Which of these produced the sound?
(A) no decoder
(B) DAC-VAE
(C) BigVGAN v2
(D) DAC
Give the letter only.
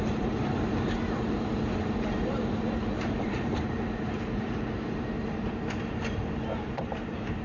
C